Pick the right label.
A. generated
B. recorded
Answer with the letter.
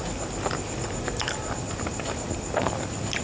B